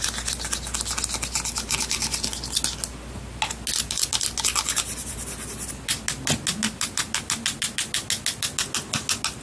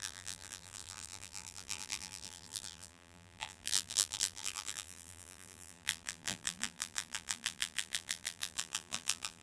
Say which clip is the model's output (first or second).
second